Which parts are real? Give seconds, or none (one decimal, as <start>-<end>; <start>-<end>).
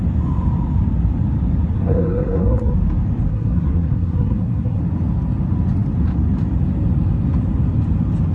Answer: 0.0-1.7; 2.7-3.3; 4.8-8.3